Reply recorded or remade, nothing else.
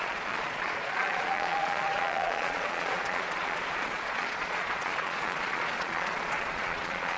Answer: remade